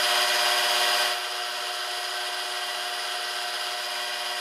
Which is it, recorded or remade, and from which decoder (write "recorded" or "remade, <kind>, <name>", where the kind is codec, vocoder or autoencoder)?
recorded